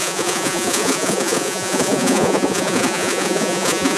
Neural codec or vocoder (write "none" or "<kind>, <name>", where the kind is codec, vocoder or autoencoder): vocoder, Vocos